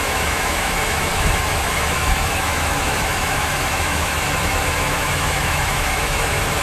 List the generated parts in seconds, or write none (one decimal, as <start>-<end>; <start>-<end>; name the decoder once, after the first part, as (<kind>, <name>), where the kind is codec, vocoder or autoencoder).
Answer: 0.0-6.6 (autoencoder, DAC-VAE)